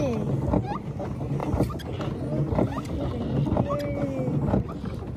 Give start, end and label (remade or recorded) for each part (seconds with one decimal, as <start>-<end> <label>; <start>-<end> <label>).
0.0-5.2 recorded